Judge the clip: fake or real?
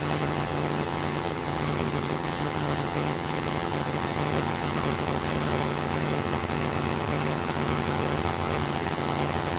fake